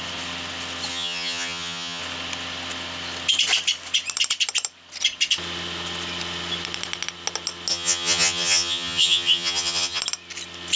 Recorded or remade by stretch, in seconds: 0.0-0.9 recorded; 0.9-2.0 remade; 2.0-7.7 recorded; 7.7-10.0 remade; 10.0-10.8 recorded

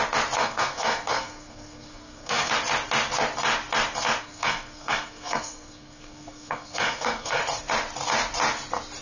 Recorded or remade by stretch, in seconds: 0.0-0.4 recorded; 0.4-2.5 remade; 2.5-4.2 recorded; 4.2-7.4 remade; 7.4-9.0 recorded

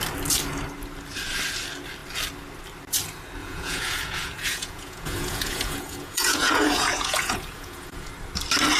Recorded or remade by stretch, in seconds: 0.0-3.4 recorded; 3.4-8.1 remade; 8.1-8.8 recorded

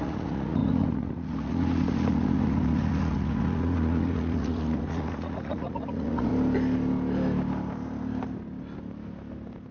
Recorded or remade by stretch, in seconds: 0.0-6.3 remade; 6.3-9.7 recorded

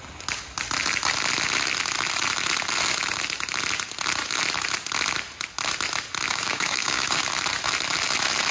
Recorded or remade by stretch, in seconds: 0.0-6.3 recorded; 6.3-7.2 remade; 7.2-8.5 recorded

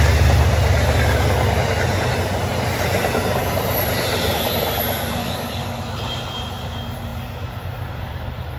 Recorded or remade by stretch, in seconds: 0.0-5.2 recorded; 5.2-5.8 remade; 5.8-8.6 recorded

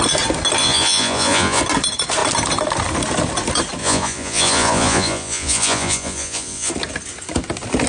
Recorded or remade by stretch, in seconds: 0.0-0.6 recorded; 0.6-1.6 remade; 1.6-3.8 recorded; 3.8-6.7 remade; 6.7-7.9 recorded

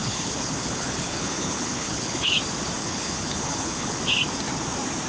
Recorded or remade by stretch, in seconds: 0.0-2.3 remade; 2.3-2.8 recorded; 2.8-4.0 remade; 4.0-5.1 recorded